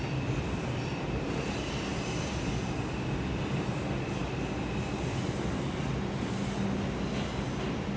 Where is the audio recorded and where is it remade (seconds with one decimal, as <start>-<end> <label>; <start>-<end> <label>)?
0.0-8.0 recorded